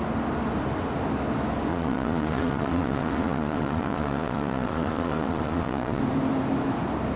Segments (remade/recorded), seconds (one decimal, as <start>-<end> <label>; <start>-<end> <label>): 0.0-1.7 recorded; 1.7-6.0 remade; 6.0-7.2 recorded